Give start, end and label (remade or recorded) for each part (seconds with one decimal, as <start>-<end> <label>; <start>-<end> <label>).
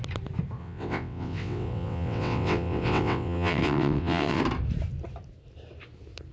0.0-0.6 recorded; 0.6-4.4 remade; 4.4-6.3 recorded